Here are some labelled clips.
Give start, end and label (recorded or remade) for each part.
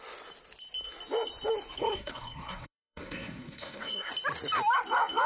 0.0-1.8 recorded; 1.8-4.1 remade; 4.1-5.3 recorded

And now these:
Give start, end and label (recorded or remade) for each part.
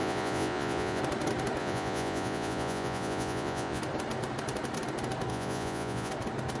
0.0-1.0 remade; 1.0-1.6 recorded; 1.6-3.8 remade; 3.8-5.3 recorded; 5.3-6.1 remade; 6.1-6.6 recorded